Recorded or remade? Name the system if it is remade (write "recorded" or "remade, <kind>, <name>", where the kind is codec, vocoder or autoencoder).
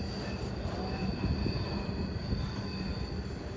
recorded